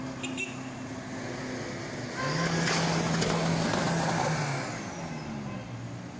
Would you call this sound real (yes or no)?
yes